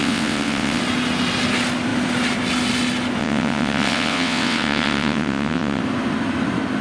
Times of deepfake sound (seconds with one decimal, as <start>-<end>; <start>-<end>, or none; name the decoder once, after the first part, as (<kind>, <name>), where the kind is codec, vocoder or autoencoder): 0.0-0.8 (vocoder, WaveNeXt); 3.2-5.8